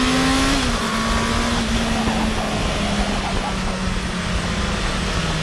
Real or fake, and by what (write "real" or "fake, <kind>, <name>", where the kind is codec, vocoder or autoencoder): real